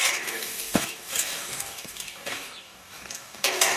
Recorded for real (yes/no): no